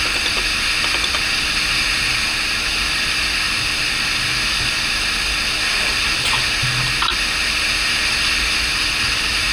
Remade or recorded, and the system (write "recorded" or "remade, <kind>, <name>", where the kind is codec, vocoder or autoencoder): recorded